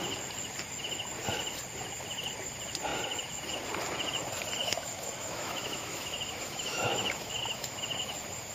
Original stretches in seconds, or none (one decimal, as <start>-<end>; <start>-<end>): 0.0-4.6; 7.8-8.5